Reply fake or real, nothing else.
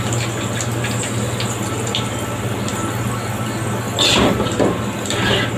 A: real